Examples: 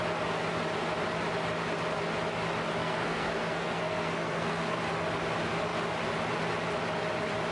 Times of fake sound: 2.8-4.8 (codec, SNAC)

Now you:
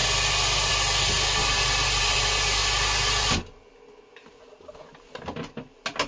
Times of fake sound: none

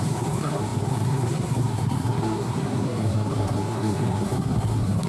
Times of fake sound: 0.0-5.1 (codec, SNAC)

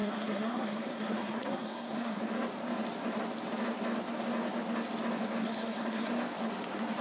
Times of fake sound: 0.0-2.2 (codec, SNAC); 5.4-6.1